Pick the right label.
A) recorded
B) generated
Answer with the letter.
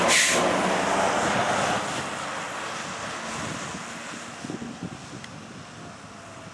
A